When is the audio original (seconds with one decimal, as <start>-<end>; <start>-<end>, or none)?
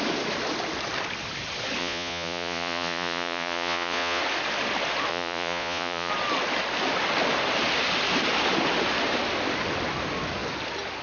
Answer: 0.0-1.8; 4.2-5.1; 6.1-11.0